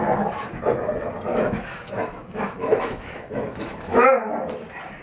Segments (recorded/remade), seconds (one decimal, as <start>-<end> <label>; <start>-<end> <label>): 0.0-1.3 recorded; 1.3-4.3 remade; 4.3-5.0 recorded